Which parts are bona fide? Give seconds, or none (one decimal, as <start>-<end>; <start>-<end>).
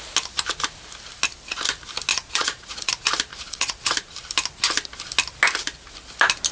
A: 0.0-2.1; 2.9-3.3; 3.9-6.5